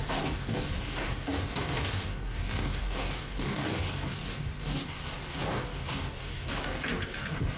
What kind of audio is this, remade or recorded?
remade